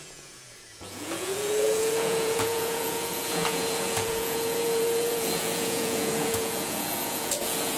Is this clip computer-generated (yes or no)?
yes